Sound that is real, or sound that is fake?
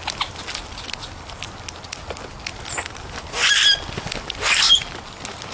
real